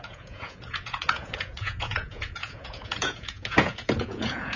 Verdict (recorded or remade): remade